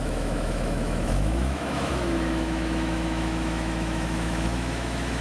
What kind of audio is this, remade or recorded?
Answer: remade